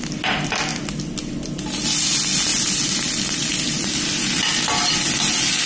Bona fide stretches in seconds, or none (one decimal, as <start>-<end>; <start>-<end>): 0.0-5.7